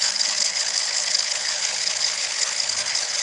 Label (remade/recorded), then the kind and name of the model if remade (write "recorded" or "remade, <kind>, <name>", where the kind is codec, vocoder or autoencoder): remade, codec, HILCodec